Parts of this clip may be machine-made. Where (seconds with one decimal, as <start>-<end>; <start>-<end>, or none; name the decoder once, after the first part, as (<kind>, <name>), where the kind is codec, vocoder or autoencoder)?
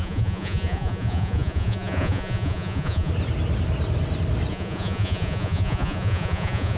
0.0-3.1 (vocoder, Vocos); 4.5-6.8